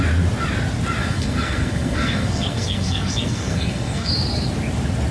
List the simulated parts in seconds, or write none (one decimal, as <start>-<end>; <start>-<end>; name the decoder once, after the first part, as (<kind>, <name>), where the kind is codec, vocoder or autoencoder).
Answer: 1.0-4.1 (codec, SNAC)